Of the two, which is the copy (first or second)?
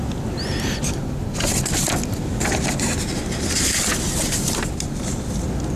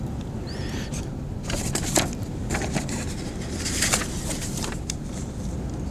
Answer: second